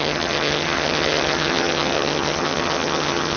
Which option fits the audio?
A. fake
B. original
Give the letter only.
A